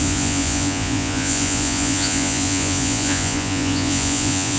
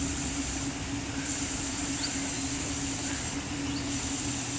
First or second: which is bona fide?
second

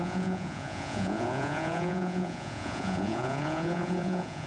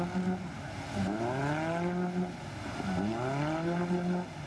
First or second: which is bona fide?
second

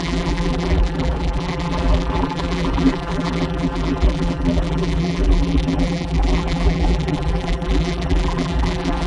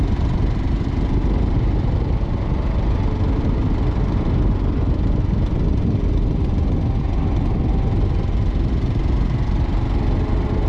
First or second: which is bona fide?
second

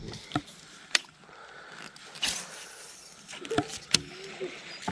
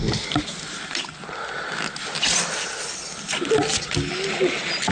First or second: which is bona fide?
second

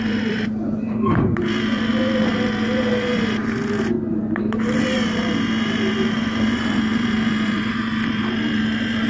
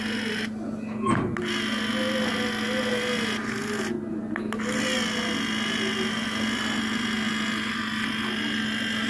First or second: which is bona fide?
second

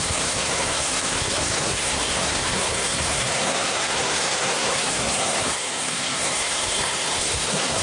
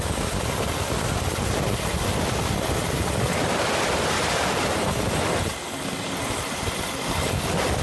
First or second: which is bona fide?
second